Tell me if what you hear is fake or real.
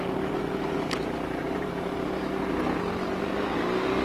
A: real